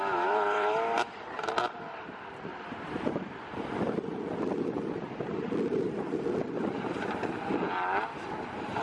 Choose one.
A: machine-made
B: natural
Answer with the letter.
A